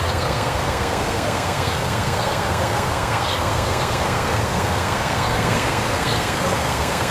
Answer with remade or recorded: remade